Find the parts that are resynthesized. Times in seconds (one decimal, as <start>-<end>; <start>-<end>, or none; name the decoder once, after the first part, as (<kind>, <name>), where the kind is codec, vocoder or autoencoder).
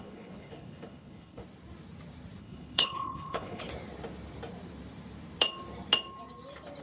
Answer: 0.0-1.4 (codec, HILCodec); 2.4-3.7